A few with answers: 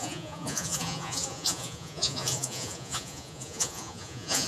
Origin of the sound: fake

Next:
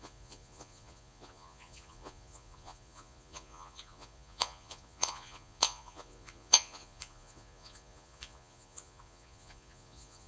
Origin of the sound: fake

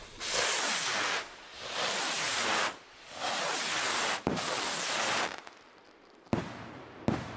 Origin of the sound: real